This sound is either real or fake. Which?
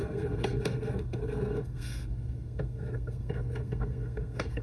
fake